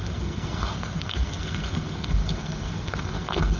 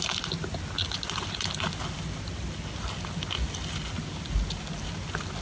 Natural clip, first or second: second